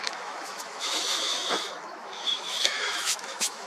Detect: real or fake fake